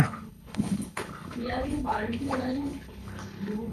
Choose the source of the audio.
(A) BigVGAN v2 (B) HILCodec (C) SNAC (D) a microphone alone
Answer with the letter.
B